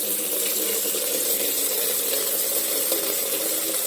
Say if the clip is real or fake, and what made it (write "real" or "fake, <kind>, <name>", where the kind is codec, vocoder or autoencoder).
fake, vocoder, BigVGAN v2